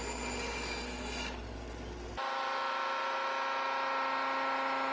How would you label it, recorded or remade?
recorded